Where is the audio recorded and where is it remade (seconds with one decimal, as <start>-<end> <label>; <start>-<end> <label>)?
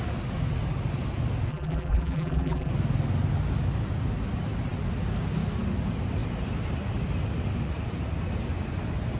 0.0-1.5 recorded; 1.5-2.7 remade; 2.7-9.2 recorded